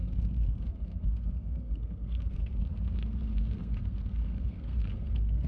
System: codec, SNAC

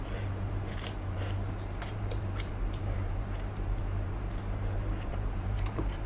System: vocoder, BigVGAN v2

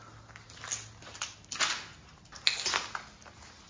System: none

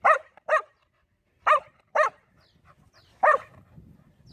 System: none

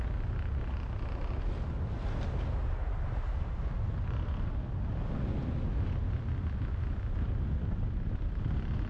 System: none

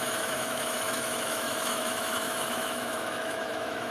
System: autoencoder, DAC-VAE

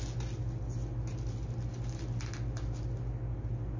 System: none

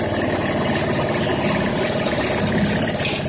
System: none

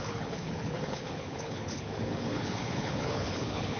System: codec, HILCodec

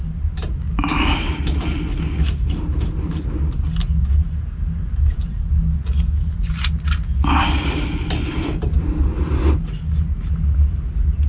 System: none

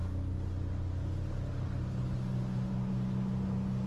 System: none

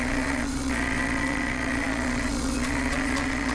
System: vocoder, Vocos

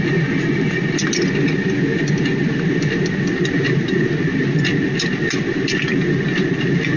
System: none